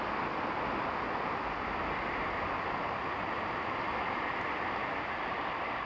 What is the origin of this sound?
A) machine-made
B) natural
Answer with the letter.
B